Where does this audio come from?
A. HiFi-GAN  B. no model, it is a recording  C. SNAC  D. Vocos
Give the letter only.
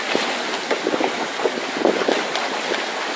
B